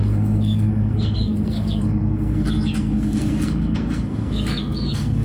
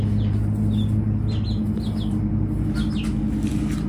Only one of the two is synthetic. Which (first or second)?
first